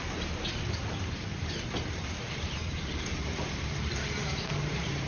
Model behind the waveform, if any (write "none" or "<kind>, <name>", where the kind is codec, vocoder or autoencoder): vocoder, BigVGAN v2